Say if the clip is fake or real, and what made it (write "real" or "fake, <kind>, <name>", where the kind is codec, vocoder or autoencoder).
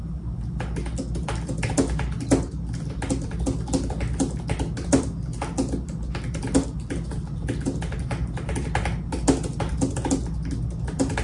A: real